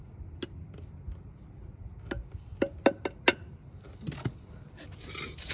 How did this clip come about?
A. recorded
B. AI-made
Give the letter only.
A